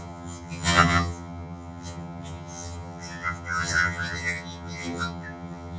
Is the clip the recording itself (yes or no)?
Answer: no